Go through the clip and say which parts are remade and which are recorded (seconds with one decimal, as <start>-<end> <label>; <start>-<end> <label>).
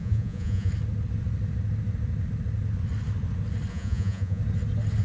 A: 0.0-0.7 remade; 0.7-3.7 recorded; 3.7-4.4 remade; 4.4-5.0 recorded